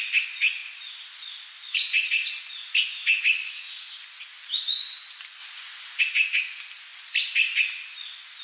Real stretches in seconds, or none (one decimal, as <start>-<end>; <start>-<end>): 0.0-8.4